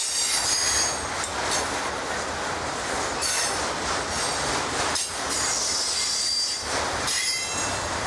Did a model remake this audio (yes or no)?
no